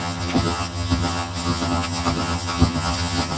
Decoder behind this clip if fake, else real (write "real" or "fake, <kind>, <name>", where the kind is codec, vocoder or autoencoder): fake, vocoder, HiFi-GAN